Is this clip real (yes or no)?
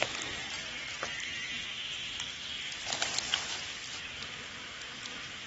yes